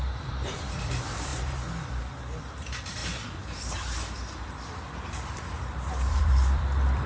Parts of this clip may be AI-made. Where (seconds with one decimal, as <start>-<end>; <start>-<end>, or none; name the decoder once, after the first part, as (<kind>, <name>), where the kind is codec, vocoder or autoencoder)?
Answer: 0.0-7.1 (vocoder, BigVGAN v2)